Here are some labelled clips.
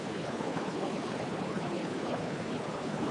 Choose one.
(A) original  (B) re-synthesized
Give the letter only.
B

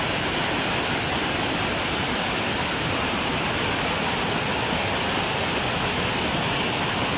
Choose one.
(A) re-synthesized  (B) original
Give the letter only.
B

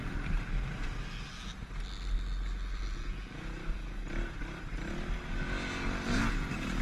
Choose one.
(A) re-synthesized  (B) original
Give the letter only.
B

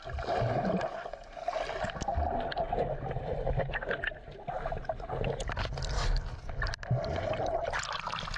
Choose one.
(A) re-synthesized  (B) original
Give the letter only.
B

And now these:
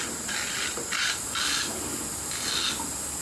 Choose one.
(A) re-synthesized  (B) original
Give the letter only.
B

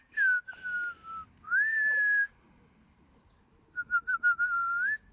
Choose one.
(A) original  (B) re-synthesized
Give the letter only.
A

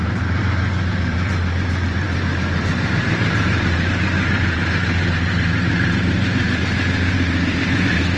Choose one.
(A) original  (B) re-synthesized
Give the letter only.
B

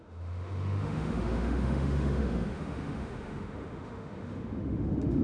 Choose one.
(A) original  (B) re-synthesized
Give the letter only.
B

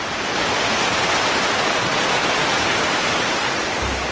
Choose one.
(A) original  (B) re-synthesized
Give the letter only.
A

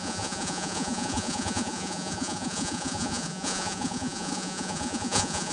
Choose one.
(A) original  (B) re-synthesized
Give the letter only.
B